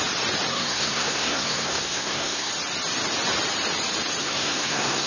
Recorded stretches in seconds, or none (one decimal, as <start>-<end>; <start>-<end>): 0.0-0.5; 2.5-4.2